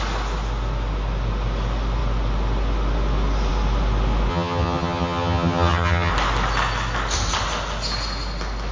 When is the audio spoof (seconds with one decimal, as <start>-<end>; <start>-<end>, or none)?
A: 4.3-6.1